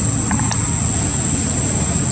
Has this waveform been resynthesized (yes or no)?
no